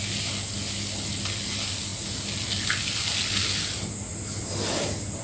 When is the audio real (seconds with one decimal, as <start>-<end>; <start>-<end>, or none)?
0.0-5.2

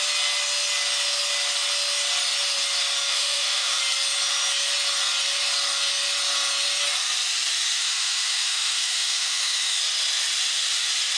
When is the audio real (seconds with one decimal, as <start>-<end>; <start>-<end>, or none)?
0.0-3.1; 3.8-7.8; 9.8-11.2

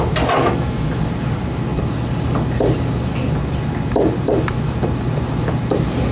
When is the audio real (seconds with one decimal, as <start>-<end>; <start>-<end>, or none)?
0.0-0.4; 1.0-6.1